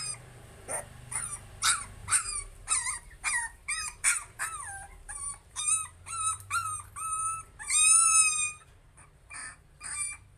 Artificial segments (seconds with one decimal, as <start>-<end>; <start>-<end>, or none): 0.0-10.4